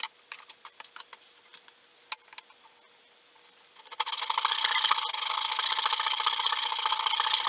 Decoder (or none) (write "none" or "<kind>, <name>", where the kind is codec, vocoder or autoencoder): none